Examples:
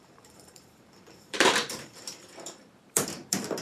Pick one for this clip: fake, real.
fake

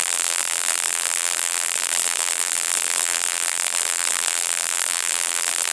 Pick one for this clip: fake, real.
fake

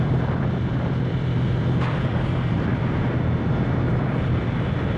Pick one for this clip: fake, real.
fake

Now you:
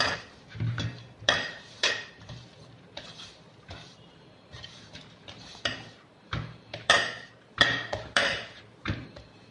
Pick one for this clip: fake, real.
fake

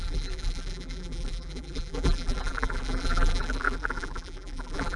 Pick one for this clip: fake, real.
fake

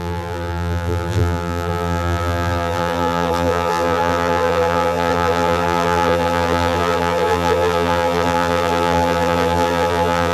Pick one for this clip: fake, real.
fake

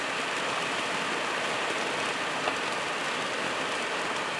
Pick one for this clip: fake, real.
real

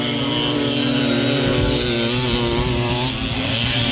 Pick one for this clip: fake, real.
real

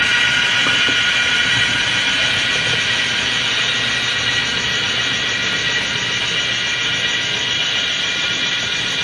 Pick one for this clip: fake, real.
real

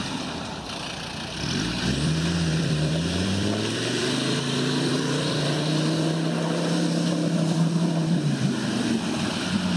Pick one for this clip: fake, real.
fake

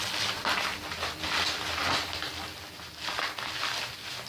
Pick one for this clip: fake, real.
real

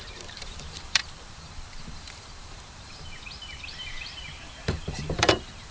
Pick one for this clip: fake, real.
fake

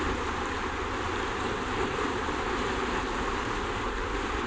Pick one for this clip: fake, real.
fake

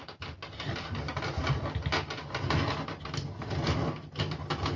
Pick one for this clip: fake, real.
real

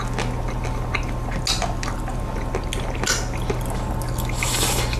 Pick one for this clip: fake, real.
real